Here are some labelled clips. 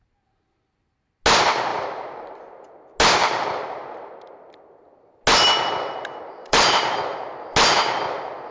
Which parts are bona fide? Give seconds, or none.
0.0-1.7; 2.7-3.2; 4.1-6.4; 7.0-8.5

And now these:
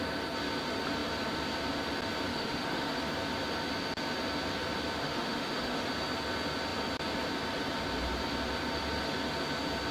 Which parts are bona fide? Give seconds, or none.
0.0-2.3; 3.0-5.0; 5.9-9.9

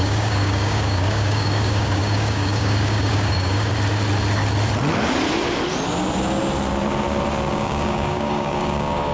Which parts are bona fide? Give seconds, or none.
3.7-7.5